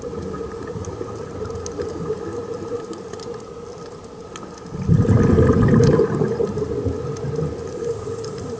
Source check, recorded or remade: recorded